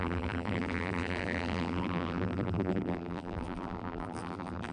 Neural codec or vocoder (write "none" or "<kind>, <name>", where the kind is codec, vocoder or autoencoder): vocoder, BigVGAN v2